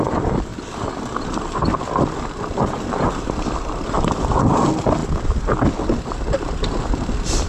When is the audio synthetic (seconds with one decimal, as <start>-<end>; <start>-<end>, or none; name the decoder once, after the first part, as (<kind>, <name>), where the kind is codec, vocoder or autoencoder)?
0.0-0.5 (vocoder, BigVGAN v2); 1.9-5.0; 6.9-7.5